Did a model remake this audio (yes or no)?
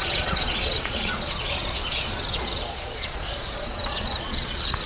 yes